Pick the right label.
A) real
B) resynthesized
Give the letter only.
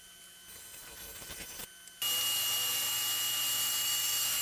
A